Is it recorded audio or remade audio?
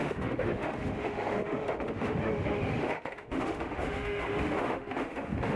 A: remade